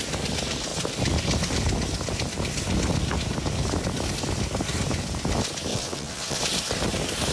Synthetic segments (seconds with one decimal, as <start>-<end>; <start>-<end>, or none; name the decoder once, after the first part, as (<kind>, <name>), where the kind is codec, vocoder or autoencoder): 5.7-6.4 (vocoder, WaveNeXt)